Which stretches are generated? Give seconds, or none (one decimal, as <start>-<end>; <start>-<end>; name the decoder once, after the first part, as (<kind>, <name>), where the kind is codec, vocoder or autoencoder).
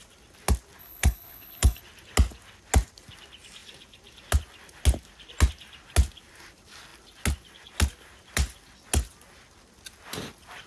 0.8-1.8 (codec, HILCodec)